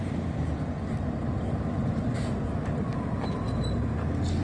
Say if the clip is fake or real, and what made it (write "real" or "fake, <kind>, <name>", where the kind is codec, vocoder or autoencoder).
real